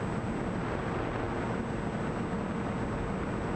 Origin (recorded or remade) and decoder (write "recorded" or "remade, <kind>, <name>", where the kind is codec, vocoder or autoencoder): recorded